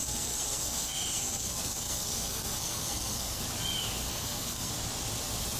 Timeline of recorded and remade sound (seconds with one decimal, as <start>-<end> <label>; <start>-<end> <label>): 0.0-3.4 remade; 3.4-4.1 recorded; 4.1-4.7 remade; 4.7-5.6 recorded